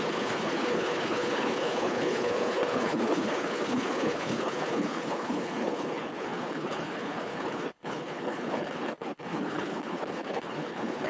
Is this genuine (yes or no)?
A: no